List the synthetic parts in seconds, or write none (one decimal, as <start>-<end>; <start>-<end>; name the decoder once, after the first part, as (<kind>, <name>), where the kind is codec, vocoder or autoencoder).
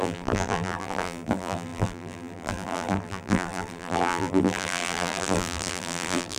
0.0-6.4 (vocoder, BigVGAN v2)